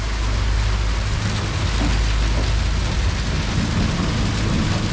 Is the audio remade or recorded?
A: recorded